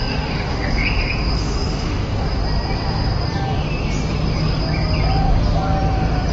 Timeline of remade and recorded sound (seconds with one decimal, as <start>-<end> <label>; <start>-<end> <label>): 0.0-2.4 remade; 2.4-6.3 recorded